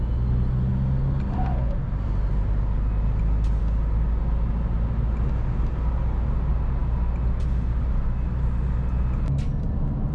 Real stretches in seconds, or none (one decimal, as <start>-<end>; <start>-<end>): 0.0-10.1

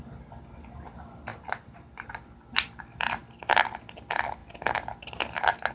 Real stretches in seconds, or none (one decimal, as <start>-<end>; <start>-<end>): 0.0-1.3; 3.4-4.4